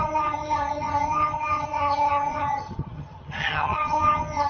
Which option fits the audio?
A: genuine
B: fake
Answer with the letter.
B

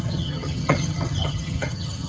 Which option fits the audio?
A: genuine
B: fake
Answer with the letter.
B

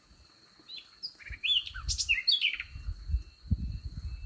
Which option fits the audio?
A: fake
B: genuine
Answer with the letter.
B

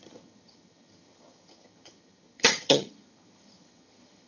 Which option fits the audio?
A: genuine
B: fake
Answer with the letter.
B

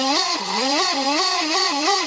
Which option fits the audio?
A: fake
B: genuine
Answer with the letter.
A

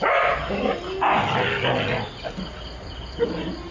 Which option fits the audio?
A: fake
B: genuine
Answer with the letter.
B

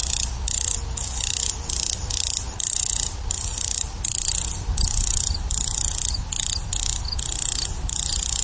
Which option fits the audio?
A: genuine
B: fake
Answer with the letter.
A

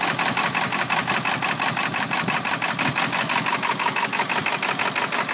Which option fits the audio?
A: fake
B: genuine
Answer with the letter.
B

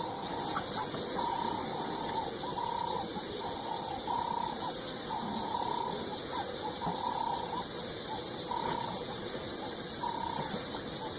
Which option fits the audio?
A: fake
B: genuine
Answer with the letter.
B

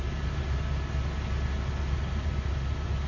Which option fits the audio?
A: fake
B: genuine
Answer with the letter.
B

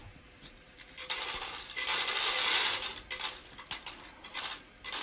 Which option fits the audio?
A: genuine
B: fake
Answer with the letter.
A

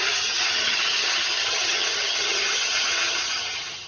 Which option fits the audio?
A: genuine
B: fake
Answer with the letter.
B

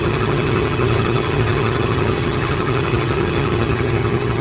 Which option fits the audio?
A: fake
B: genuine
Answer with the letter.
A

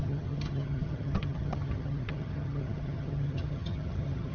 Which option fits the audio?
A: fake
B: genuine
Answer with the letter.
A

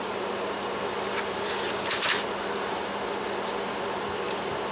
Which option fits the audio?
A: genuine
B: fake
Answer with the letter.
A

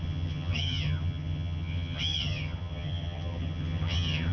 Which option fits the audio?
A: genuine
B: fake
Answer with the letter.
B